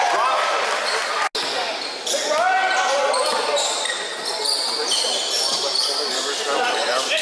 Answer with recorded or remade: recorded